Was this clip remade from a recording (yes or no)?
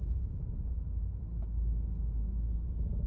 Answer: no